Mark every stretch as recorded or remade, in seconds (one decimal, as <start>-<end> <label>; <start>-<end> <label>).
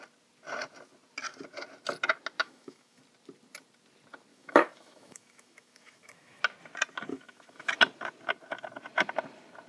0.0-2.4 recorded; 2.4-3.0 remade; 3.0-4.3 recorded; 4.3-6.4 remade; 6.4-7.1 recorded; 7.1-7.7 remade; 7.7-9.7 recorded